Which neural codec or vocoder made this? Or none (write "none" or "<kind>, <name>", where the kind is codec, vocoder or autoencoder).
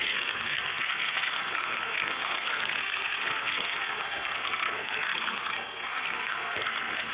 codec, SNAC